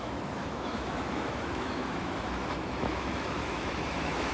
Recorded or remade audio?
remade